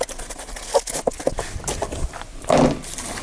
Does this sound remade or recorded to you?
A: recorded